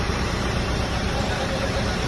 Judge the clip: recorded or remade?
remade